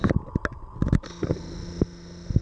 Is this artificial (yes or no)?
no